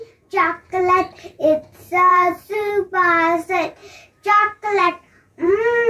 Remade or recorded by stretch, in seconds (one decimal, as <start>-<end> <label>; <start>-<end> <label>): 0.0-0.8 remade; 0.8-2.1 recorded; 2.1-2.7 remade; 2.7-3.8 recorded; 3.8-5.5 remade; 5.5-5.9 recorded